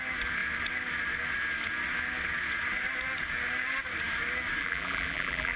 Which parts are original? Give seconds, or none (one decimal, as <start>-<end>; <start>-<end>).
0.0-4.6